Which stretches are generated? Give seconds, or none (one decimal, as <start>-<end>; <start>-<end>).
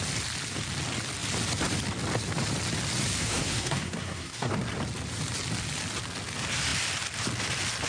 3.2-4.5